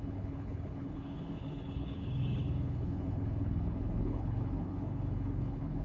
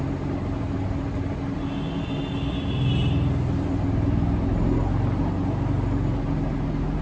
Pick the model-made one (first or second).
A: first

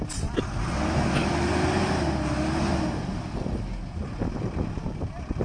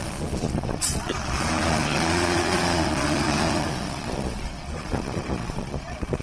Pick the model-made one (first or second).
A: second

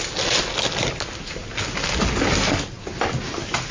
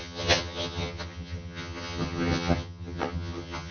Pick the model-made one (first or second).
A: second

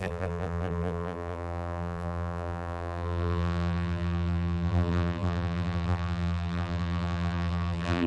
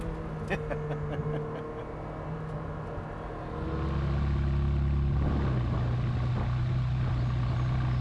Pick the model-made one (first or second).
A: first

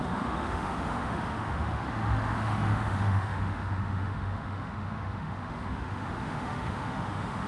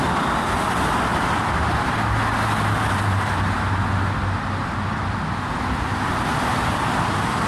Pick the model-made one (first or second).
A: first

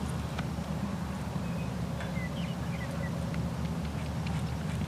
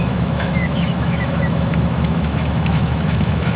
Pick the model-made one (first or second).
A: second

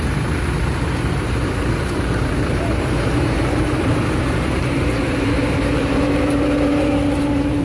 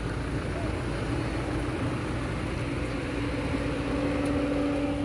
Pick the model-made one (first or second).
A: first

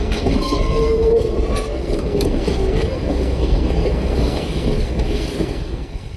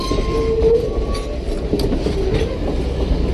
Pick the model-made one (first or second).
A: first